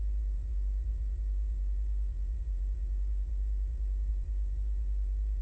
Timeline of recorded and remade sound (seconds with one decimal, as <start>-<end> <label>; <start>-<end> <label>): 0.0-5.4 remade